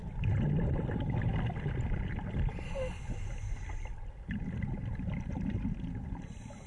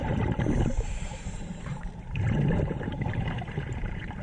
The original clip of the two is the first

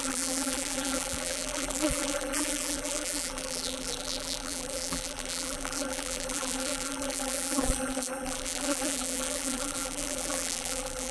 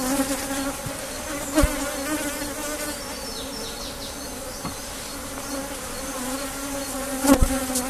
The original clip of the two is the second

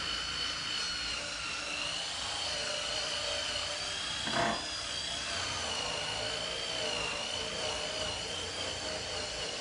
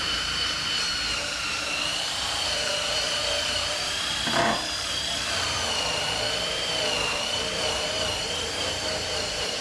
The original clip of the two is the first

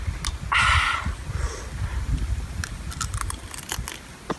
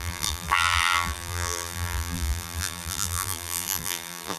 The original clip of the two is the first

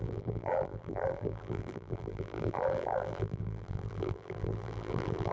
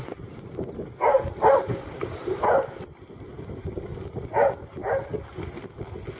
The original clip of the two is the second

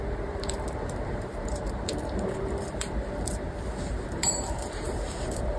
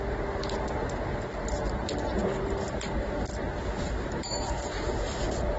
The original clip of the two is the second